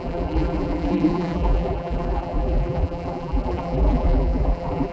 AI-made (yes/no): yes